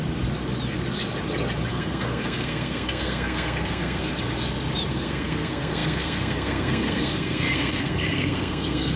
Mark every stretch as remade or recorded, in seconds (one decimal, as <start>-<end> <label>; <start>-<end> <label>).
0.0-1.7 recorded; 1.7-4.1 remade; 4.1-4.9 recorded; 4.9-9.0 remade